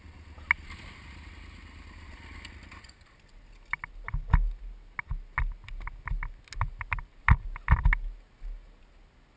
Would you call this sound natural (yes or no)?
yes